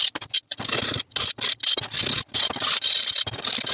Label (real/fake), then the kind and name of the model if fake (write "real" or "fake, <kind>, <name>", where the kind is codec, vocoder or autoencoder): real